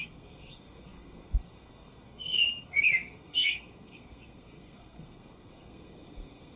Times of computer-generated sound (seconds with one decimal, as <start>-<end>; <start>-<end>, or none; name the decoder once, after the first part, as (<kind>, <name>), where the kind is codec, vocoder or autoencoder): 0.0-6.6 (codec, SNAC)